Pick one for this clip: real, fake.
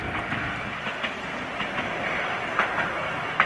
real